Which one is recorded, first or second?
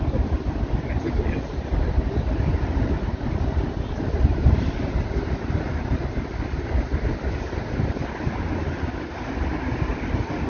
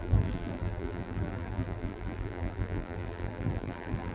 first